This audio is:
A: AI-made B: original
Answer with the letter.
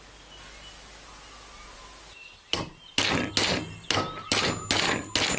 B